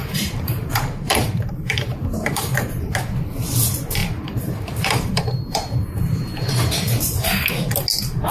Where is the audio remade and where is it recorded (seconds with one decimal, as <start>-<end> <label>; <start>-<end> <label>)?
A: 0.0-2.9 remade; 2.9-4.0 recorded; 4.0-7.4 remade; 7.4-8.3 recorded